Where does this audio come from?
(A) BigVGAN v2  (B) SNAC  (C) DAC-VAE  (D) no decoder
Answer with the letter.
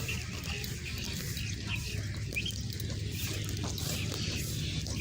D